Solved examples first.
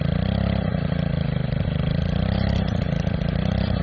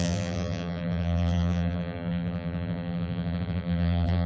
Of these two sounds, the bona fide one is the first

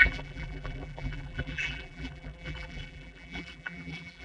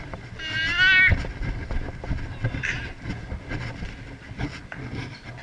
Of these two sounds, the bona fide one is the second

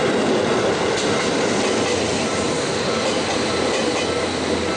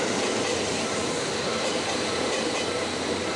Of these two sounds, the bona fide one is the first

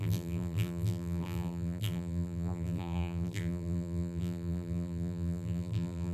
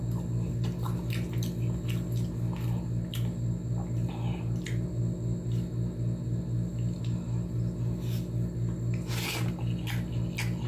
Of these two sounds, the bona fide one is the second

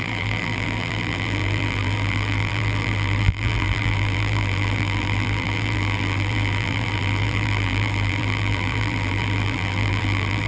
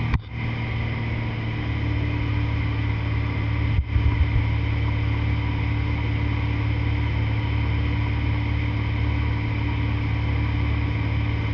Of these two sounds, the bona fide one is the second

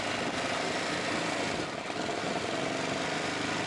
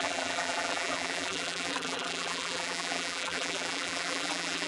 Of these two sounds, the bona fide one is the first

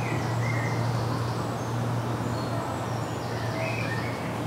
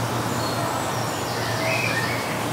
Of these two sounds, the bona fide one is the first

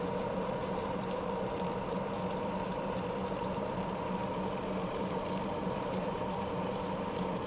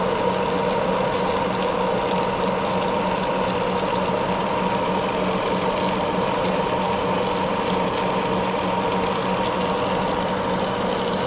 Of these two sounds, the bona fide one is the second